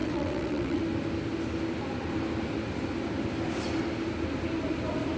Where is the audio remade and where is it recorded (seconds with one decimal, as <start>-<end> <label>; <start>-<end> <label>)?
0.0-0.8 remade; 0.8-5.2 recorded

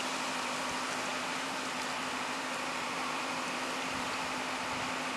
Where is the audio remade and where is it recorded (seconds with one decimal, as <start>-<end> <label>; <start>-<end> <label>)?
0.0-0.6 remade; 0.6-1.1 recorded; 1.1-4.2 remade; 4.2-5.2 recorded

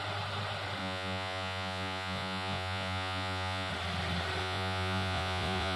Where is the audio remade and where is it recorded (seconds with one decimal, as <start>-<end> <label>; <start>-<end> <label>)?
0.0-0.8 recorded; 0.8-3.7 remade; 3.7-4.4 recorded; 4.4-5.8 remade

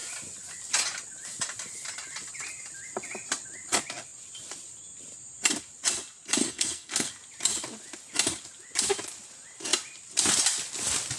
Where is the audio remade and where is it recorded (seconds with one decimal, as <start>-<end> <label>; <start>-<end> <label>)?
0.0-6.4 recorded; 6.4-7.1 remade; 7.1-11.2 recorded